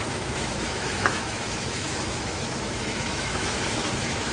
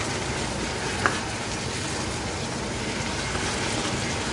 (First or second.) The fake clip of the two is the first